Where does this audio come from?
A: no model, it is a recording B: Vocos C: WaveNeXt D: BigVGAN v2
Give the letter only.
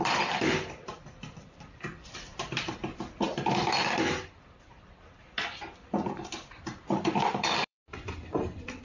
D